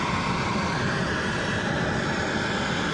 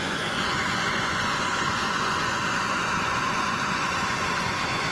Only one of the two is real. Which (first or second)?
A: first